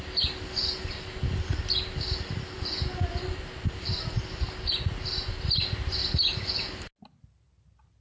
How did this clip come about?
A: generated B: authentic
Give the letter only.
B